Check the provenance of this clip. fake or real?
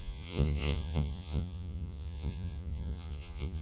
fake